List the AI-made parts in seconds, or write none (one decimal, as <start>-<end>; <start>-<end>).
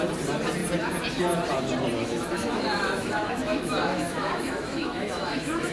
2.0-5.7